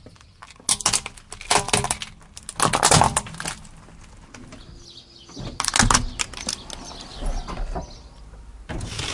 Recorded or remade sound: recorded